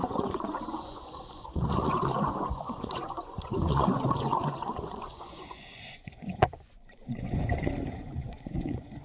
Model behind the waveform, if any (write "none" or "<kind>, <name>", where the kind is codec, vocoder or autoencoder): vocoder, Vocos